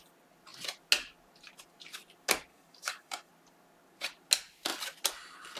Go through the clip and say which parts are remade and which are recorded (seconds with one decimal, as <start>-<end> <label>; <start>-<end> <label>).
0.0-2.5 recorded; 2.5-3.3 remade; 3.3-5.6 recorded